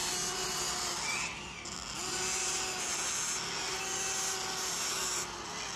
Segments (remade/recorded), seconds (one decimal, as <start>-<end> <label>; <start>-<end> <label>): 0.0-5.8 recorded